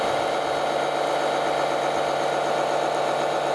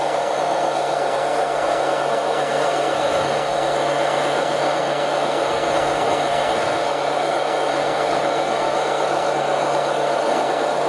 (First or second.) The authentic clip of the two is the first